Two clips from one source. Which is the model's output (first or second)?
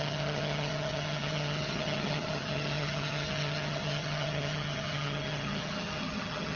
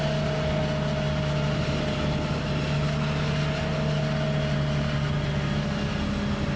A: first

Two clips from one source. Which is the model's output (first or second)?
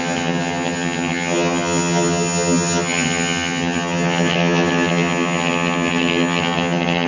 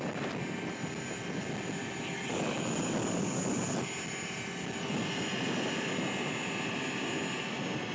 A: first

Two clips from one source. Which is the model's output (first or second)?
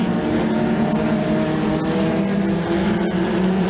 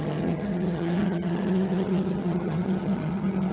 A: second